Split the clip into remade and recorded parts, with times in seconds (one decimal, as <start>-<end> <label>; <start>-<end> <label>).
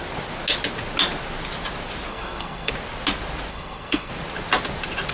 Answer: 0.0-2.1 recorded; 2.1-2.7 remade; 2.7-3.5 recorded; 3.5-4.1 remade; 4.1-5.1 recorded